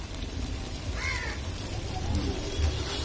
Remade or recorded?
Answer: remade